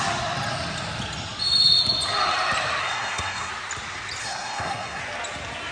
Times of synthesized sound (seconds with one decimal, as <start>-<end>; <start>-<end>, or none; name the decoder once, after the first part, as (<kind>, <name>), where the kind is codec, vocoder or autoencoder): 2.8-3.5 (codec, SNAC); 4.2-5.0